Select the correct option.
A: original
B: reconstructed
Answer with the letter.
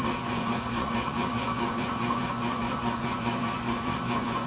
B